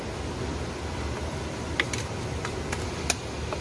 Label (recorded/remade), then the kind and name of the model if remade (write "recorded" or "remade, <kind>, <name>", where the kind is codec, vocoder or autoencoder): recorded